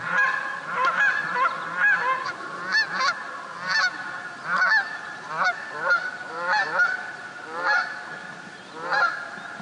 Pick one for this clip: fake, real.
real